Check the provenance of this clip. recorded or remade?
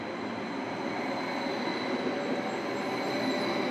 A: recorded